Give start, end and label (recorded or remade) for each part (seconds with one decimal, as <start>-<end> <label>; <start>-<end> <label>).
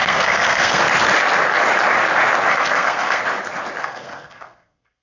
0.0-0.8 remade; 0.8-2.5 recorded; 2.5-3.2 remade; 3.2-3.8 recorded; 3.8-5.0 remade